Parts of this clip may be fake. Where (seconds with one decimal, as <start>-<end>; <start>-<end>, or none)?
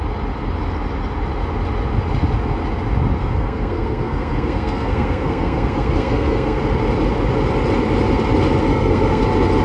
3.2-6.6; 8.7-9.2